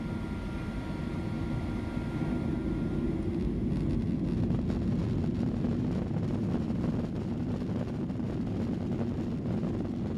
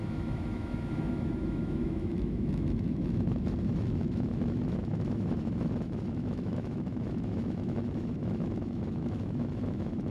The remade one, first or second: second